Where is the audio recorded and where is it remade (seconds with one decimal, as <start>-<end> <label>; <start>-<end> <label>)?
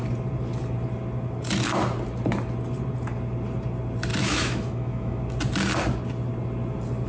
0.0-4.1 recorded; 4.1-5.2 remade; 5.2-7.1 recorded